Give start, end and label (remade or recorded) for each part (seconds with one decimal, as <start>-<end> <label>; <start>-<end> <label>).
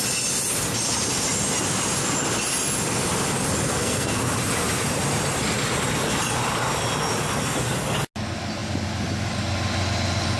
0.0-3.7 recorded; 3.7-4.2 remade; 4.2-10.4 recorded